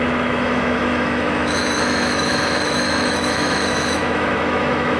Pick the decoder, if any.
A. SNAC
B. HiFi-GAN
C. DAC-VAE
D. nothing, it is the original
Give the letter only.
C